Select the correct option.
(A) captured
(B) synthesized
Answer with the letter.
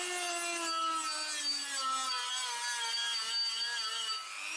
A